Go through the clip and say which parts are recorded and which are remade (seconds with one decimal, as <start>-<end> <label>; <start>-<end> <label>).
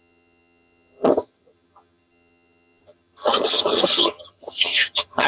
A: 0.0-5.3 remade